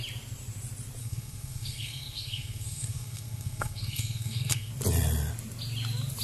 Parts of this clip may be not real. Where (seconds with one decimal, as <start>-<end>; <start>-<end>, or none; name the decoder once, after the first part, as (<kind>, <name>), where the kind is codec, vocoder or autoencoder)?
1.0-4.7 (codec, SNAC)